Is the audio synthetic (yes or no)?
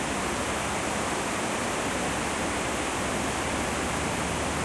no